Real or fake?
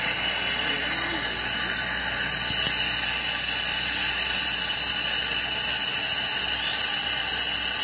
real